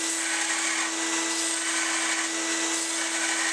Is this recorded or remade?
recorded